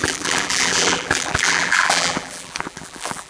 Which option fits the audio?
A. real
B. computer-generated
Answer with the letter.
B